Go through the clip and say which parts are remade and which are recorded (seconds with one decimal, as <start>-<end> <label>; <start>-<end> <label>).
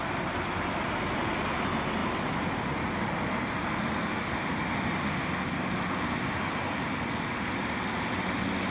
0.0-8.7 recorded